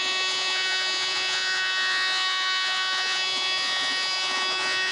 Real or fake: fake